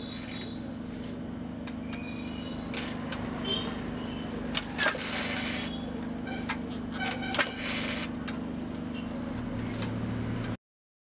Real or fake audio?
real